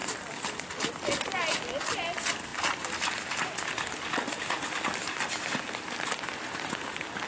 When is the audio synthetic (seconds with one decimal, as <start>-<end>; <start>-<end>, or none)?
none